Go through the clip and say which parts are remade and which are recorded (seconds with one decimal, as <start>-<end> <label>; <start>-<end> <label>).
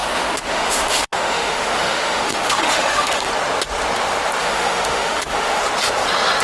0.0-3.3 remade; 3.3-4.4 recorded; 4.4-5.6 remade; 5.6-6.4 recorded